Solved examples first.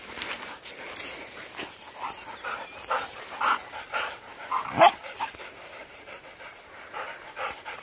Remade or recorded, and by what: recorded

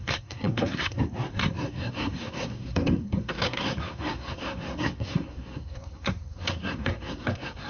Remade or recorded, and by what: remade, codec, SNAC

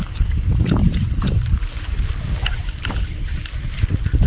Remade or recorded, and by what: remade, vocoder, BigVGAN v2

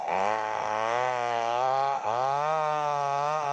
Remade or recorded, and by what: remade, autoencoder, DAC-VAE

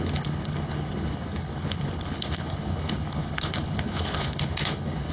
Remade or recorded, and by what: remade, codec, HILCodec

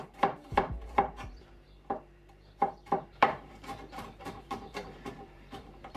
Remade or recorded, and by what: remade, vocoder, BigVGAN v2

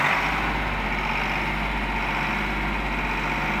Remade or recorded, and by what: recorded